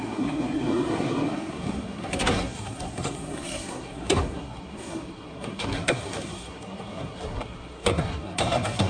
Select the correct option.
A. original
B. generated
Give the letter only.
B